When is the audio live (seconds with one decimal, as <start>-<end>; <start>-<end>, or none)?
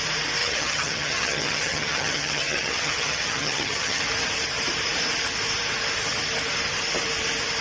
0.0-0.4; 4.0-7.6